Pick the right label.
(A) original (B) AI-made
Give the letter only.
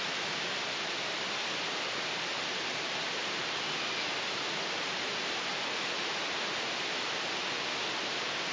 A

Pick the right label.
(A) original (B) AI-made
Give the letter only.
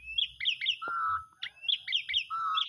A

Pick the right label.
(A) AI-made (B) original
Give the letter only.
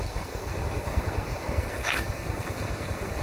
A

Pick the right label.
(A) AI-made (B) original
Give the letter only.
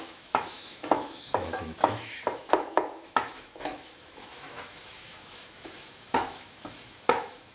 A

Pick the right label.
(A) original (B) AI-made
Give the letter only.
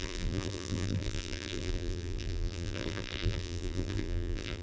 B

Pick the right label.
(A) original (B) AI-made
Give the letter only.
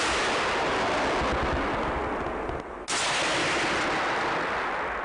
A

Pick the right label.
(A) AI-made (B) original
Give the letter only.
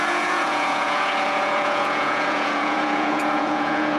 A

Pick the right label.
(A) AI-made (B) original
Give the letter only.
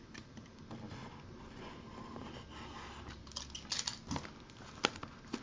B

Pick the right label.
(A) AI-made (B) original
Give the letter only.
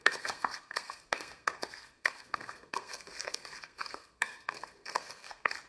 A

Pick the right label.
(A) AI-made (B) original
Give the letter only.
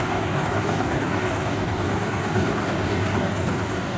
A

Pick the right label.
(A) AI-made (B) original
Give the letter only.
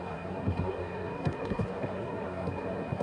A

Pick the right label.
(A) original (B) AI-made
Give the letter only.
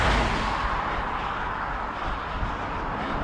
A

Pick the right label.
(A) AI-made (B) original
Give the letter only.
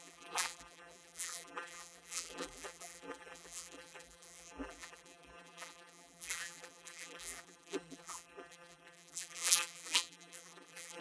A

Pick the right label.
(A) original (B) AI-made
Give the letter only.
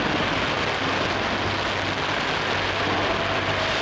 A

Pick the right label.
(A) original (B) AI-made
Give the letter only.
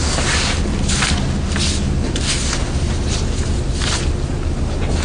A